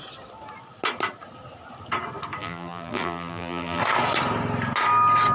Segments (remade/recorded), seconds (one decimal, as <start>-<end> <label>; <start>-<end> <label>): 0.0-2.4 recorded; 2.4-3.8 remade; 3.8-5.3 recorded

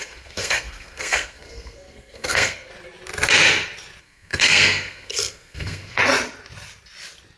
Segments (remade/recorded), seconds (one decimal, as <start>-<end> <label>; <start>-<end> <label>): 0.0-2.7 remade; 2.7-4.0 recorded; 4.0-6.0 remade; 6.0-7.4 recorded

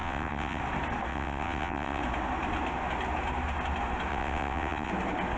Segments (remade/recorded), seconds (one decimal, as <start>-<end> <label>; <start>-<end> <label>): 0.0-0.6 remade; 0.6-1.1 recorded; 1.1-2.0 remade; 2.0-4.1 recorded; 4.1-4.9 remade; 4.9-5.4 recorded

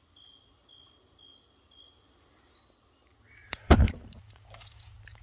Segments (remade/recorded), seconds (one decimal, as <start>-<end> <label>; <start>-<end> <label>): 0.0-3.4 recorded; 3.4-4.2 remade; 4.2-5.2 recorded